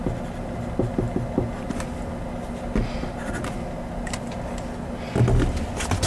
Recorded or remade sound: recorded